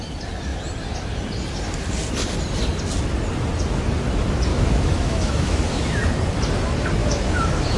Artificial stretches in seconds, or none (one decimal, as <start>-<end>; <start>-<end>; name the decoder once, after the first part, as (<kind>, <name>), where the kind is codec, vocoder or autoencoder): 4.5-6.0 (autoencoder, DAC-VAE); 7.0-7.8